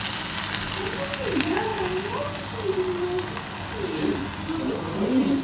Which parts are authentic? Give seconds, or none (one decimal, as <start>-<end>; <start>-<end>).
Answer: 0.0-5.4